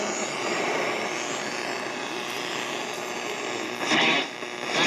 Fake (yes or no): no